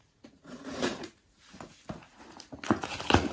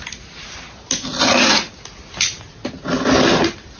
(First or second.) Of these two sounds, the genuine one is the second